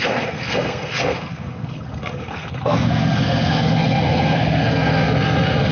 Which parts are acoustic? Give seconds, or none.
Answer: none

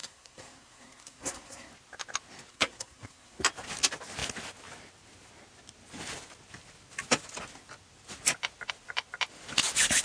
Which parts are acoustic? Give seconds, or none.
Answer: 1.7-2.5; 3.4-10.0

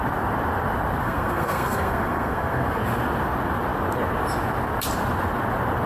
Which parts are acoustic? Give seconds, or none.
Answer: 0.0-1.0; 2.8-5.9